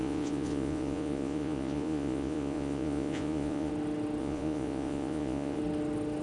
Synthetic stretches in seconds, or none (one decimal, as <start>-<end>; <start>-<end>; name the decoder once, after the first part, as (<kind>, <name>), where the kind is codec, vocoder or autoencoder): 0.0-3.7 (vocoder, Vocos); 4.2-5.6